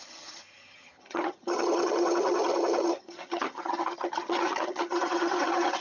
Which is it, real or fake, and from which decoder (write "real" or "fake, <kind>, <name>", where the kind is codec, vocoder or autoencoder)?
fake, vocoder, HiFi-GAN